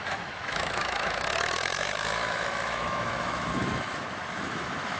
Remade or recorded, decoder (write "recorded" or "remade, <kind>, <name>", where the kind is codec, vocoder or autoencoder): remade, autoencoder, DAC-VAE